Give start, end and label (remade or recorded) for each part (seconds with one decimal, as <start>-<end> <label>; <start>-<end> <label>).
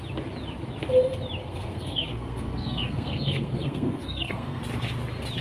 0.0-1.4 recorded; 1.4-4.6 remade; 4.6-5.4 recorded